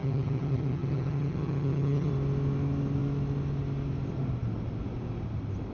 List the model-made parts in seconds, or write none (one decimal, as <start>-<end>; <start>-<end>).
0.0-2.1